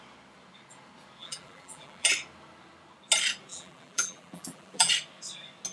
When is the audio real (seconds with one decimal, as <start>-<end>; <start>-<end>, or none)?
0.0-1.2; 2.1-3.5; 4.9-5.7